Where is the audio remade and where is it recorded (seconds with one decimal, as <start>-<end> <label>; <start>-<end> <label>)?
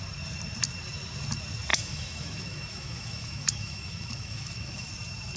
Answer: 0.0-1.7 recorded; 1.7-4.9 remade; 4.9-5.4 recorded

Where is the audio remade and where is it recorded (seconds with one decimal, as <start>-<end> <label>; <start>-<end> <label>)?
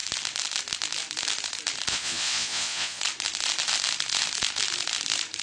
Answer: 0.0-1.9 recorded; 1.9-3.0 remade; 3.0-5.4 recorded